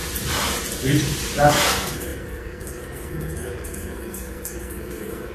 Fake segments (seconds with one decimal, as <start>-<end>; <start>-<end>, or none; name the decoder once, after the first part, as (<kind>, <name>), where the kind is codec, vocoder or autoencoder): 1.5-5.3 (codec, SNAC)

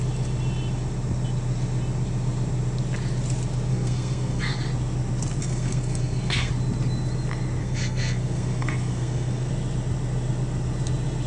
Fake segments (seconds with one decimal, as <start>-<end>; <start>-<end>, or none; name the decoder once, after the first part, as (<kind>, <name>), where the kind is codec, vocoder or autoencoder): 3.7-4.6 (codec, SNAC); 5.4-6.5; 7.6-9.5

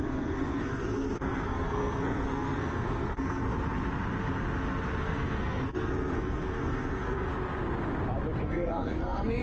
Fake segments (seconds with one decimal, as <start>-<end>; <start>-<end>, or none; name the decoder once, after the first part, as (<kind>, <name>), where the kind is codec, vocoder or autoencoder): 0.0-3.5 (codec, SNAC); 5.0-7.3; 8.4-9.4

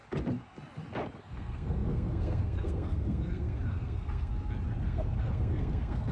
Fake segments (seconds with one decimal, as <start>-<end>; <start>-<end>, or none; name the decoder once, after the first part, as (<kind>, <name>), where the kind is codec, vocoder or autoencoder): 1.2-4.3 (codec, SNAC); 4.8-6.1

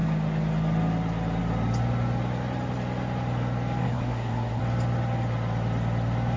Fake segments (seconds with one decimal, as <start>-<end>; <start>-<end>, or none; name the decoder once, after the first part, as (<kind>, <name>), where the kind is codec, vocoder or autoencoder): 3.8-4.6 (codec, SNAC)

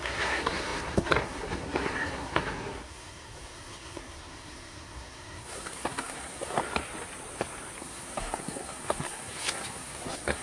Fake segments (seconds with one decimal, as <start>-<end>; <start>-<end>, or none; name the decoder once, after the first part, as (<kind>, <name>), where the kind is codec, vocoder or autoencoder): 0.0-6.6 (codec, SNAC); 7.8-10.4

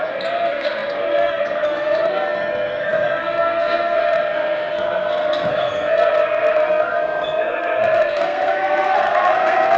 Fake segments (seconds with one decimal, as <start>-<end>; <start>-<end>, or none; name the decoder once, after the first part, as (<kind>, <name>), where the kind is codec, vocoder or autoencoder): 0.0-9.8 (codec, SNAC)

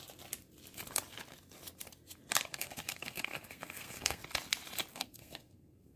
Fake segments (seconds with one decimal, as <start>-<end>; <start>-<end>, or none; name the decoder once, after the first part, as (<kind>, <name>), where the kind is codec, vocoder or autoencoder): 2.5-4.2 (codec, SNAC); 4.9-6.0